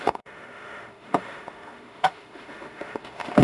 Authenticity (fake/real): fake